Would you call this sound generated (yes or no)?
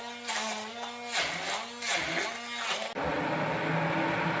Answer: no